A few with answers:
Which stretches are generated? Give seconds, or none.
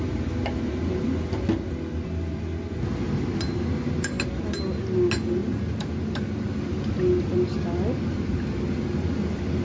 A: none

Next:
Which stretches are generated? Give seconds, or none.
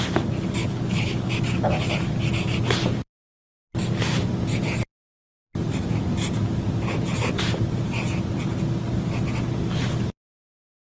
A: 0.6-1.3 (codec, HILCodec)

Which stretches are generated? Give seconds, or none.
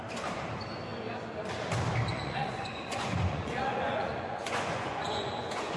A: 2.1-5.8 (vocoder, Vocos)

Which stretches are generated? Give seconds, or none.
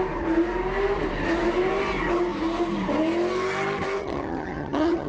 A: 4.0-5.1 (vocoder, HiFi-GAN)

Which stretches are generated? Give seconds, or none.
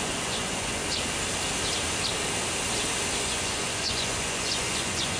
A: 0.0-0.8 (vocoder, Vocos); 3.2-5.2